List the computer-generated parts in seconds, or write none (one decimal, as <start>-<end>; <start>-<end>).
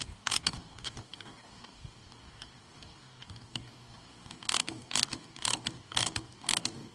0.0-6.9